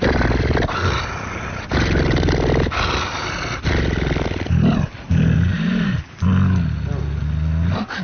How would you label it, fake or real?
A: real